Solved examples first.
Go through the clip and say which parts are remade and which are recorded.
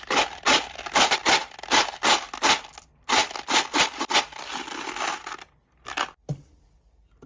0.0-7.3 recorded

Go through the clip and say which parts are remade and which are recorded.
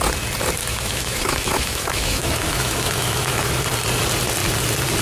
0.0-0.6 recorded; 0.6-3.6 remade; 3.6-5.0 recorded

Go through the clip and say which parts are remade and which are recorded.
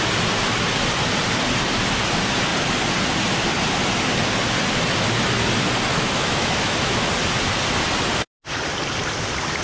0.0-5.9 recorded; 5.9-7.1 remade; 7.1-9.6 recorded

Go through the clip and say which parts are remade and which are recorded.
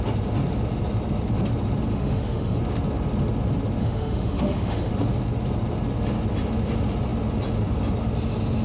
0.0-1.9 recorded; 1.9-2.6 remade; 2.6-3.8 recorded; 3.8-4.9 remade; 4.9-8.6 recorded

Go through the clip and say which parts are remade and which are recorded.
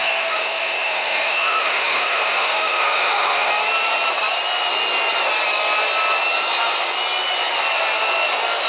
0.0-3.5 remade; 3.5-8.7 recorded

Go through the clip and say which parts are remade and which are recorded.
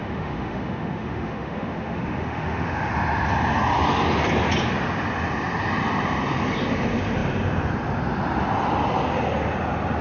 0.0-2.9 remade; 2.9-10.0 recorded